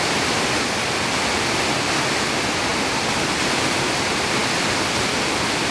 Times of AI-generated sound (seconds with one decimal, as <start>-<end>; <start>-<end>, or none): 0.0-2.7; 3.7-5.7

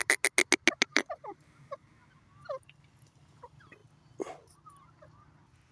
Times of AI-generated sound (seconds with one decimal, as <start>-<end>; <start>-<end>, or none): 0.9-1.9

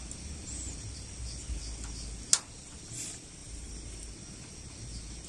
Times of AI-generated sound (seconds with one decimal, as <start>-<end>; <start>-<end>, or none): 3.4-4.1

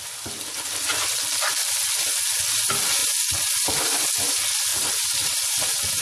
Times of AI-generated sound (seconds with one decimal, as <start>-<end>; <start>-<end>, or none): none

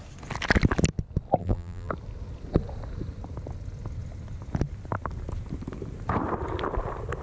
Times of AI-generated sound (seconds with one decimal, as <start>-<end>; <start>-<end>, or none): 1.4-1.9

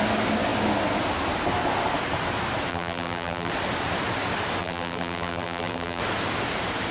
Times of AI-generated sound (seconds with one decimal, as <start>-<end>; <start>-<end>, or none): 2.7-3.5; 4.6-6.0

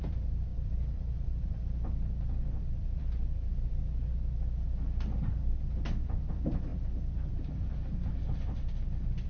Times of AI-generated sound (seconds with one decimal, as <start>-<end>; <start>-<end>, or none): 0.5-3.0